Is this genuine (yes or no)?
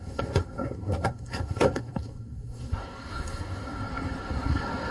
no